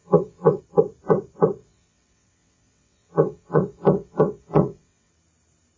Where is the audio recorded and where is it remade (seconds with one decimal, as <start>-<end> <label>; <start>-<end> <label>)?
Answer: 0.0-0.6 remade; 0.6-1.6 recorded; 1.6-5.1 remade; 5.1-5.8 recorded